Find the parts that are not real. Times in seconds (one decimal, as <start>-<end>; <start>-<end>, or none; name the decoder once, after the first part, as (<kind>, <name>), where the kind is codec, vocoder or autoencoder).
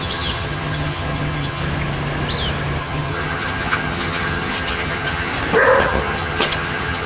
0.0-1.6 (vocoder, HiFi-GAN); 2.8-5.3; 5.8-7.1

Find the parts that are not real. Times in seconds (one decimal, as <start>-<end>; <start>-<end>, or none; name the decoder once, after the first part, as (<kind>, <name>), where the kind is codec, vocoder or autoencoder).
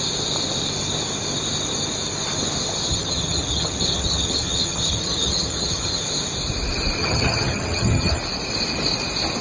2.9-6.0 (vocoder, HiFi-GAN); 7.0-8.2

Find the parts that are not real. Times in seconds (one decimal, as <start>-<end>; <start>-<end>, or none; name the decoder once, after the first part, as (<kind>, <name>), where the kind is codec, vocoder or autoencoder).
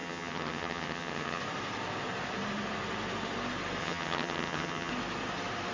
0.0-1.4 (vocoder, HiFi-GAN); 3.8-4.9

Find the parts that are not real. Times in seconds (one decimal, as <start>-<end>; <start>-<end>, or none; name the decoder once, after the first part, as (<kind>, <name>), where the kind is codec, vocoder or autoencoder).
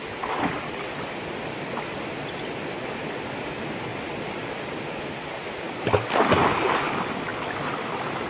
none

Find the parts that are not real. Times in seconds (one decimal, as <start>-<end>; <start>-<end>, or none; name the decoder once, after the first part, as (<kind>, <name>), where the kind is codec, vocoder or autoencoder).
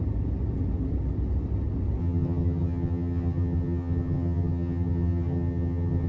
2.0-6.1 (vocoder, HiFi-GAN)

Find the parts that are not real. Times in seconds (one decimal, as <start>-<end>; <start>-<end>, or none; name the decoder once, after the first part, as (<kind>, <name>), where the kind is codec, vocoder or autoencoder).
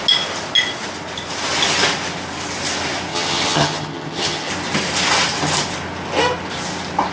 3.1-4.5 (vocoder, HiFi-GAN)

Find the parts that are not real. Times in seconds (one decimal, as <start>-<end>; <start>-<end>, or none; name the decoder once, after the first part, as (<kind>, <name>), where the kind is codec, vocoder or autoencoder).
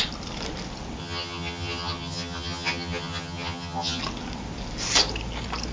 1.0-4.0 (vocoder, HiFi-GAN)